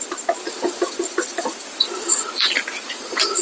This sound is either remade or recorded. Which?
remade